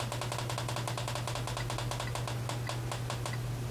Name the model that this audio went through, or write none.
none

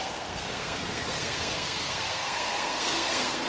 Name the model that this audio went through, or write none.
codec, SNAC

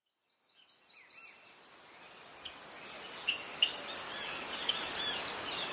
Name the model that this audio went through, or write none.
none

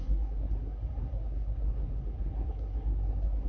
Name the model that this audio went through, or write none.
codec, SNAC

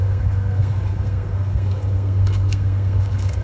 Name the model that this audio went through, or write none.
codec, SNAC